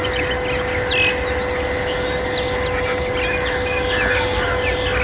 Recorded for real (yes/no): yes